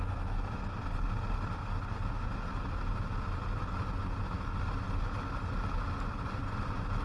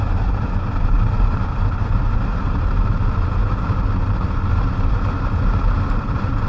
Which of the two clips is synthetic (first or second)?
second